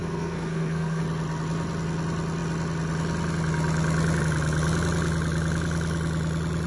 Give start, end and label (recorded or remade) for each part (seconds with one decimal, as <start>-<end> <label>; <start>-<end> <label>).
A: 0.0-1.0 remade; 1.0-6.7 recorded